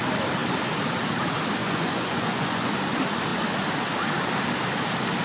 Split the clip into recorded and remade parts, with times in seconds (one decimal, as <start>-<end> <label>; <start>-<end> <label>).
0.0-1.6 recorded; 1.6-2.7 remade; 2.7-5.2 recorded